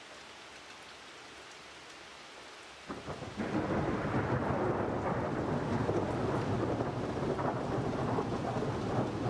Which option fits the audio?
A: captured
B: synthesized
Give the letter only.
A